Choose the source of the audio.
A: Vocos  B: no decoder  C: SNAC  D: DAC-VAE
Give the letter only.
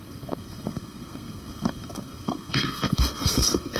C